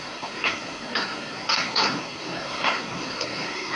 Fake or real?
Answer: fake